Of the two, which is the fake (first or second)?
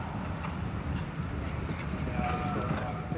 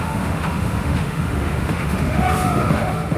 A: second